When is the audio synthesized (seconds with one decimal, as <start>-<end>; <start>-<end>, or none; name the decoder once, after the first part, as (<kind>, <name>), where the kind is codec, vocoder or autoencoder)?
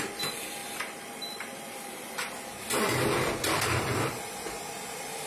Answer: 0.0-5.3 (vocoder, BigVGAN v2)